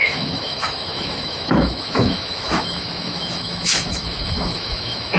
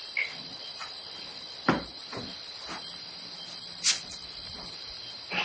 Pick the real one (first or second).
second